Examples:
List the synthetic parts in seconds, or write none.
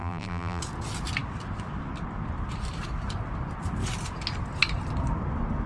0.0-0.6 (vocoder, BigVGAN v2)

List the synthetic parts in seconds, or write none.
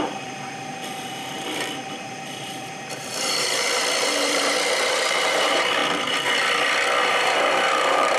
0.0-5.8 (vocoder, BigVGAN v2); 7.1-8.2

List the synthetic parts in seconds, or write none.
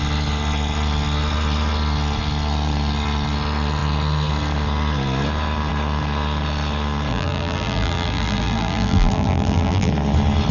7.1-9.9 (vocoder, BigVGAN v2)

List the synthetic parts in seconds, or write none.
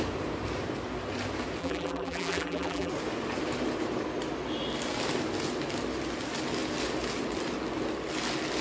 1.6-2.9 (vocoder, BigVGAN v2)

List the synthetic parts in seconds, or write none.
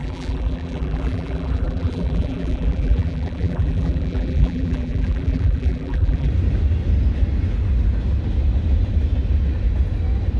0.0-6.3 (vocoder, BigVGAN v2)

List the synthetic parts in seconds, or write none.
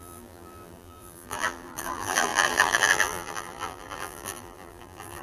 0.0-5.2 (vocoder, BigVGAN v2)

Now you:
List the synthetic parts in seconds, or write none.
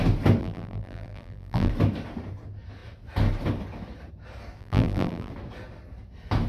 0.4-1.7 (vocoder, BigVGAN v2); 4.6-5.3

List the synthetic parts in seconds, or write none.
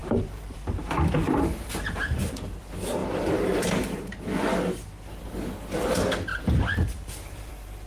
0.0-2.3 (vocoder, BigVGAN v2); 3.0-4.1; 6.3-7.5